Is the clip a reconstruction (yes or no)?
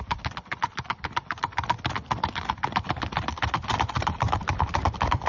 no